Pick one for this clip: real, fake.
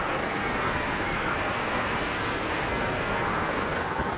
fake